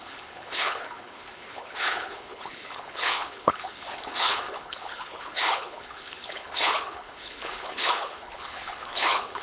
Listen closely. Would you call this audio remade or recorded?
remade